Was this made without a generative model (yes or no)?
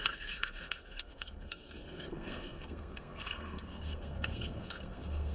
no